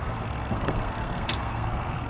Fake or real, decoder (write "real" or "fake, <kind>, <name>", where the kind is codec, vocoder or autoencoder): fake, codec, SNAC